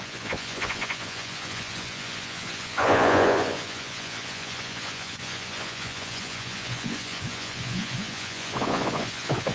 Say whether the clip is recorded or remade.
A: remade